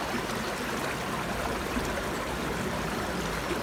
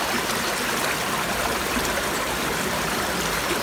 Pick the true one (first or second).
first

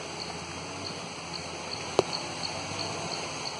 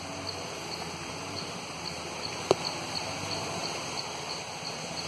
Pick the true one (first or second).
first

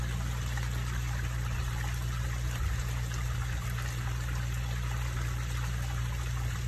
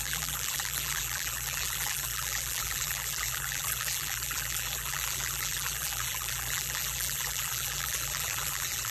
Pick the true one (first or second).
first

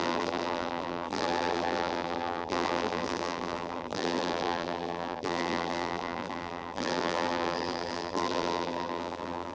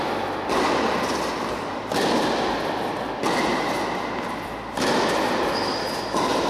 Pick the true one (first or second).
second